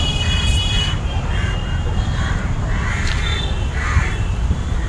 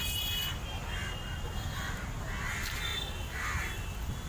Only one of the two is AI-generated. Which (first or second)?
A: first